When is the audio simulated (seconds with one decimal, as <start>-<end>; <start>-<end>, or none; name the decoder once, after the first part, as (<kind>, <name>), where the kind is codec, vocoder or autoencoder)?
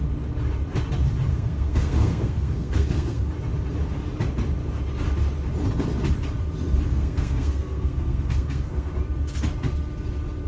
1.3-3.3 (codec, SNAC); 6.9-8.9